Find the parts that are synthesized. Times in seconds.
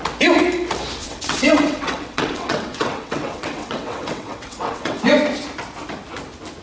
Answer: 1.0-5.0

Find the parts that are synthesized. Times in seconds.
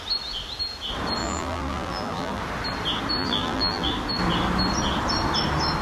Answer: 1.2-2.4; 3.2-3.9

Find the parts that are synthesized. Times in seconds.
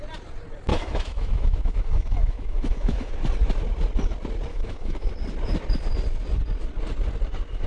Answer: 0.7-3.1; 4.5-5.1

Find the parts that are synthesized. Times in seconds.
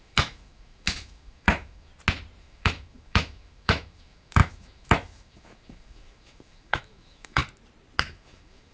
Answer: 0.0-1.9; 2.4-7.4; 8.0-8.7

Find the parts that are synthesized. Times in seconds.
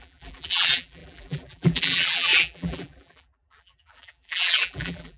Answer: 0.0-5.2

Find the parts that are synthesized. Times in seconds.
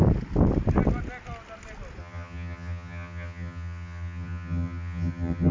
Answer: 2.0-5.5